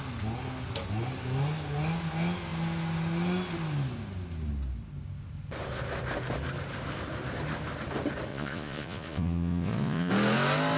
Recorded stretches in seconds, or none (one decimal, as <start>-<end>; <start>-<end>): 0.0-8.3; 10.1-10.8